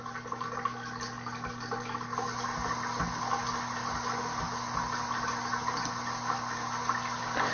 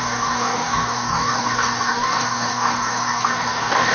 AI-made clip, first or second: second